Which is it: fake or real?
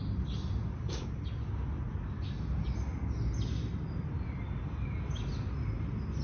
real